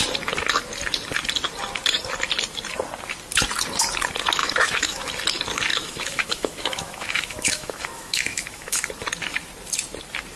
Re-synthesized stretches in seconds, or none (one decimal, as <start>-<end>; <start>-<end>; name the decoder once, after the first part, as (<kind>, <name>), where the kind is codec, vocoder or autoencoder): 4.4-5.1 (autoencoder, DAC-VAE); 5.7-8.9

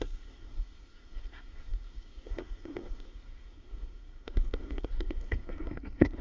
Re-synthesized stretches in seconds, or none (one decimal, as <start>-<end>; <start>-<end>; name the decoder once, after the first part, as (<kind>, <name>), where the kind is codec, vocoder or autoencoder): 0.0-6.2 (codec, SNAC)

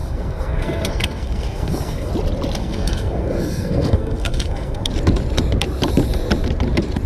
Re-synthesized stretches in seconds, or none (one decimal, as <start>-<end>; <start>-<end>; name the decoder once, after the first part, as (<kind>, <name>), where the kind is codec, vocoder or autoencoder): 0.0-2.1 (codec, SNAC); 2.6-4.9

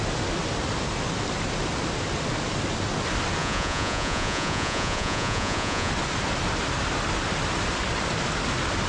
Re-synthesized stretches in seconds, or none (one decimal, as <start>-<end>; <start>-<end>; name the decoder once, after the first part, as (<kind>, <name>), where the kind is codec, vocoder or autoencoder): 3.4-5.9 (vocoder, Vocos)

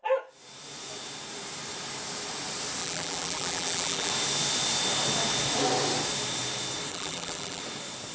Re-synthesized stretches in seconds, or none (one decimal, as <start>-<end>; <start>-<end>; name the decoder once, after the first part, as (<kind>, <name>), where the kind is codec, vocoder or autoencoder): 2.8-4.1 (vocoder, BigVGAN v2); 6.9-7.6

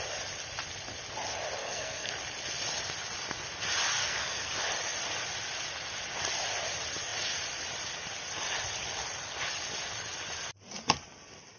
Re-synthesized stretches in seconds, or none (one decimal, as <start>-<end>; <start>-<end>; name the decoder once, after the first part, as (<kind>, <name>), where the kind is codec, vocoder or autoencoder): 1.6-2.1 (codec, SNAC); 4.0-4.5